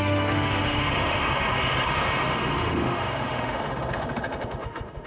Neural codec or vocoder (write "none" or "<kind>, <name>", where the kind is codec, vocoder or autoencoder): autoencoder, DAC-VAE